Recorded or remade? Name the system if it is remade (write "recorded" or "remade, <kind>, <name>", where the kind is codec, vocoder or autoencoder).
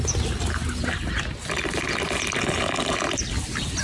recorded